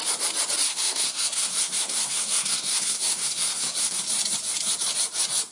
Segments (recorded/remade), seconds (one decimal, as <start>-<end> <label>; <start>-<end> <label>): 0.0-0.7 recorded; 0.7-4.0 remade; 4.0-5.5 recorded